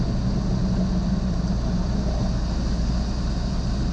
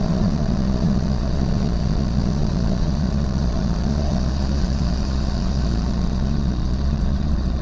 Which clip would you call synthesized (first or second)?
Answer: second